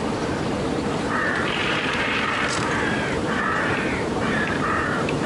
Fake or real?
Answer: fake